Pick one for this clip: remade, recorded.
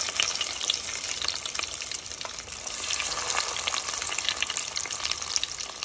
remade